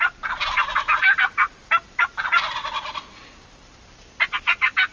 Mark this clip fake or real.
real